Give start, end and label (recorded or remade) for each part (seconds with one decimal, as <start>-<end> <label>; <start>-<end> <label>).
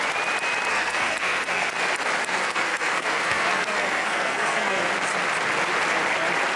0.0-0.7 recorded; 0.7-1.7 remade; 1.7-2.2 recorded; 2.2-4.9 remade; 4.9-6.6 recorded